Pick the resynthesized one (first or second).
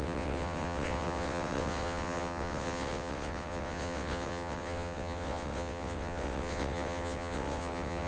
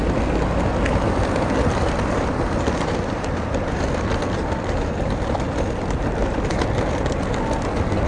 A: first